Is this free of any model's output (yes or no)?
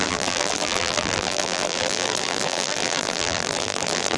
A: no